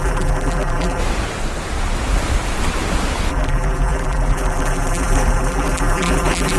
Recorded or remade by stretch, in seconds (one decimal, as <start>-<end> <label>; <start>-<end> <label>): 0.0-1.0 remade; 1.0-3.3 recorded; 3.3-6.6 remade